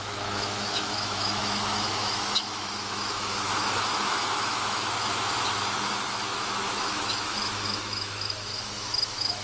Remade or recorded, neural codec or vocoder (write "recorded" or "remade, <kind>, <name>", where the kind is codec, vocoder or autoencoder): remade, autoencoder, DAC-VAE